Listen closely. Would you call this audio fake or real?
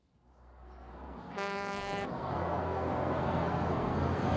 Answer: fake